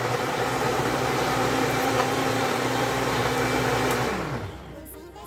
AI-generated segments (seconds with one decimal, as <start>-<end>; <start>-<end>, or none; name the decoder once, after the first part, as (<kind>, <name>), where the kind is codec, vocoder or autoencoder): 0.0-3.2 (vocoder, BigVGAN v2)